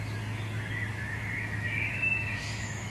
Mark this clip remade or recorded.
remade